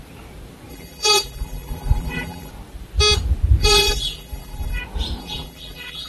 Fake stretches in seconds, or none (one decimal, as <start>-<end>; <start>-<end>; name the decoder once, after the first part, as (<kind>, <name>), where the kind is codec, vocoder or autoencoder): 0.7-2.5 (vocoder, BigVGAN v2); 3.6-4.8; 5.2-6.1